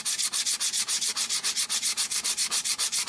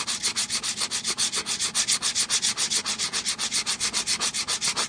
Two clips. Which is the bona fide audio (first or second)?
second